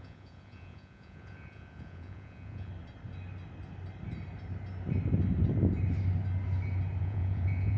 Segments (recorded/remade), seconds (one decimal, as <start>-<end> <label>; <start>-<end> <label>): 0.0-2.7 remade; 2.7-7.0 recorded; 7.0-7.8 remade